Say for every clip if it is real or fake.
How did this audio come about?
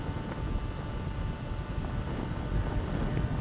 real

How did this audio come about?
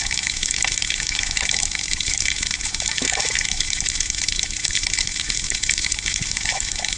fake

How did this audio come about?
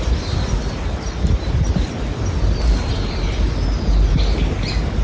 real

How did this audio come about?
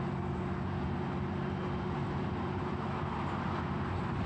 real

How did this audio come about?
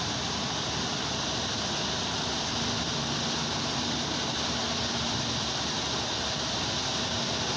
real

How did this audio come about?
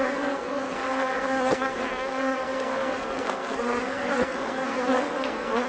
fake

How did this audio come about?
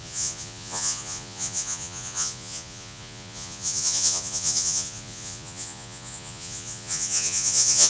fake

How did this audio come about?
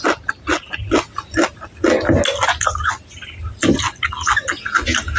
real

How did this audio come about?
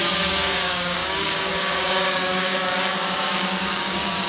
fake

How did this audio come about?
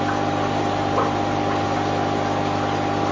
real